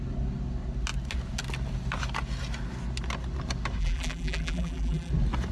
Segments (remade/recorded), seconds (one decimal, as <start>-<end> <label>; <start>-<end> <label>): 0.0-3.8 recorded; 3.8-5.1 remade; 5.1-5.5 recorded